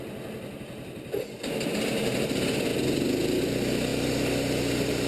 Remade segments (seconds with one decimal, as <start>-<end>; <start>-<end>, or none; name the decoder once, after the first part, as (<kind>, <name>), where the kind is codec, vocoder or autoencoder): 3.9-5.1 (vocoder, BigVGAN v2)